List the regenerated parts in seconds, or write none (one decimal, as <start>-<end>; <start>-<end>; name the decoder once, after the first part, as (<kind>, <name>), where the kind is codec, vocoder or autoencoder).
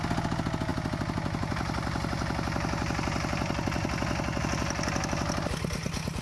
none